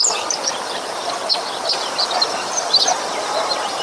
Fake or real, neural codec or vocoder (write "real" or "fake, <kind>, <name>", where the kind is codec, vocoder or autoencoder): real